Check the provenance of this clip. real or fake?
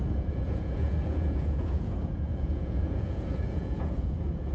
fake